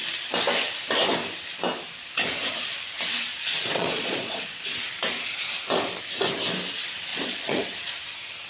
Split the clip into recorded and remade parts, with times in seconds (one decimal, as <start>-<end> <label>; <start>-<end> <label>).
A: 0.0-3.6 recorded; 3.6-4.8 remade; 4.8-7.1 recorded; 7.1-7.9 remade; 7.9-8.5 recorded